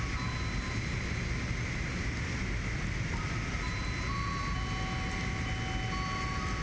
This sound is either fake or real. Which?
real